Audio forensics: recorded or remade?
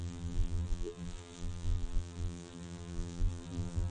remade